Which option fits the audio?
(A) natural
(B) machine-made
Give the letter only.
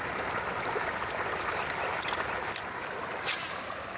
A